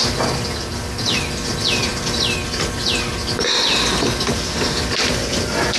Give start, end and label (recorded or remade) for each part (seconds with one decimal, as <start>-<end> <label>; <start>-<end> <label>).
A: 0.0-5.8 recorded